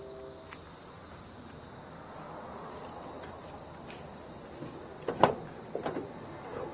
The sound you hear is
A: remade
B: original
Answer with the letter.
B